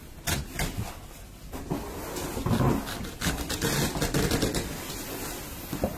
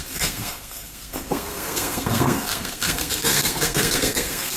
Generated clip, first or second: second